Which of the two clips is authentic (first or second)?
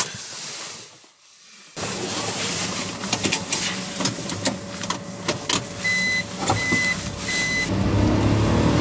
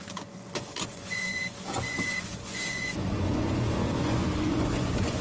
first